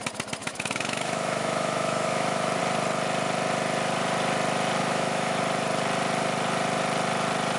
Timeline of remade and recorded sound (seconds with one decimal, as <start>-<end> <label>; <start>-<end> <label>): 0.0-0.4 recorded; 0.4-2.6 remade; 2.6-4.8 recorded; 4.8-5.4 remade; 5.4-7.6 recorded